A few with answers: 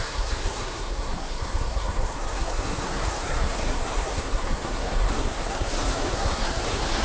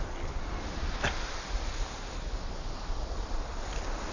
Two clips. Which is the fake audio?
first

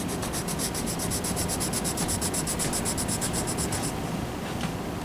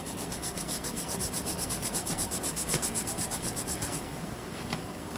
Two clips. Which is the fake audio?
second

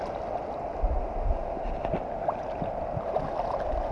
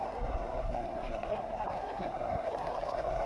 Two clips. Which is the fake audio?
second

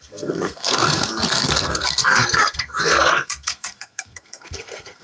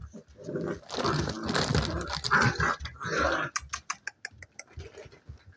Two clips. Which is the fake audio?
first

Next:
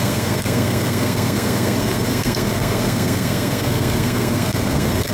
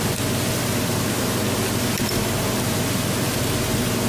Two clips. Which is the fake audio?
first